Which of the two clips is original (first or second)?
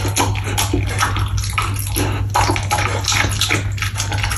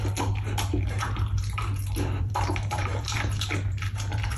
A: first